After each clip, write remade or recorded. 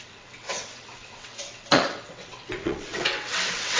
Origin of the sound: remade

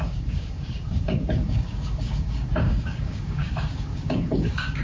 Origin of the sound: remade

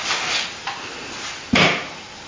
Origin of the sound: recorded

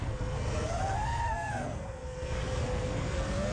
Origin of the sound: remade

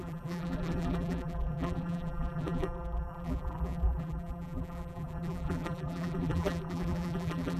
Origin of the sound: remade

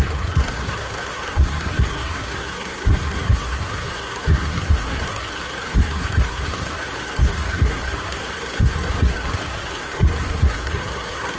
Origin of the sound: remade